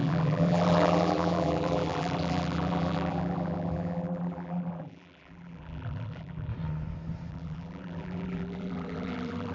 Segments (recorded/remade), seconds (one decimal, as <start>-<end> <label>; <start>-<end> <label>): 0.0-6.5 remade; 6.5-7.3 recorded; 7.3-9.5 remade